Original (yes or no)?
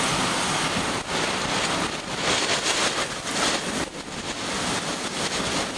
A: yes